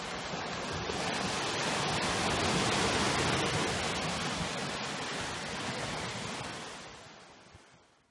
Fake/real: real